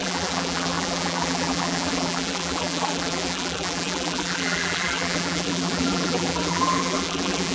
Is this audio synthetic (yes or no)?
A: yes